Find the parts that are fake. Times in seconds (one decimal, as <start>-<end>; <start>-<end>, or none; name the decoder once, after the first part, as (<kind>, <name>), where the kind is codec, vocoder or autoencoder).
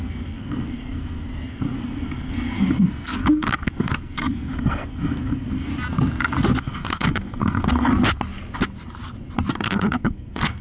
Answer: 0.0-5.7 (codec, SNAC); 6.6-7.9; 9.5-10.6